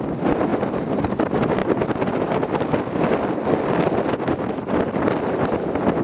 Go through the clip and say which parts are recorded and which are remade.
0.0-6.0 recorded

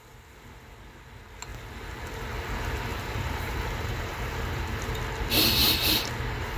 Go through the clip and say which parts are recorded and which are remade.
0.0-2.9 recorded; 2.9-4.9 remade; 4.9-5.6 recorded; 5.6-6.1 remade; 6.1-6.6 recorded

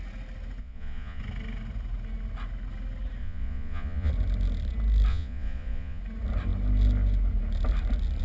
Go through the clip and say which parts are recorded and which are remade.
0.0-0.6 recorded; 0.6-1.2 remade; 1.2-3.2 recorded; 3.2-4.1 remade; 4.1-5.1 recorded; 5.1-6.0 remade; 6.0-8.2 recorded

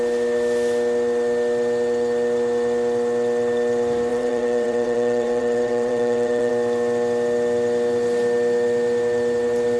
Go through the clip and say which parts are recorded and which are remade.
0.0-4.1 recorded; 4.1-6.5 remade; 6.5-9.8 recorded

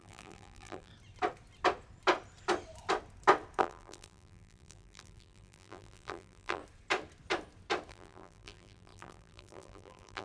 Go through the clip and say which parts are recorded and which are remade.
0.0-0.9 remade; 0.9-3.6 recorded; 3.6-6.6 remade; 6.6-7.9 recorded; 7.9-10.2 remade